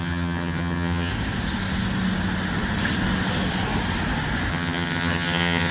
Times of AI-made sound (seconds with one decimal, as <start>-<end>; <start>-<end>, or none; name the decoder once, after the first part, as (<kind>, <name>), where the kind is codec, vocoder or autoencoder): 0.0-1.1 (vocoder, HiFi-GAN); 4.5-5.7